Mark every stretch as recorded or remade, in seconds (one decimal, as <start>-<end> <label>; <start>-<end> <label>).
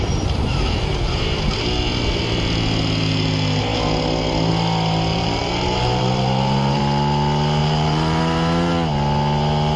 0.0-5.1 recorded; 5.1-6.8 remade; 6.8-7.6 recorded; 7.6-8.7 remade; 8.7-9.8 recorded